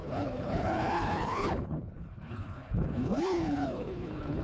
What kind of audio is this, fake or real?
fake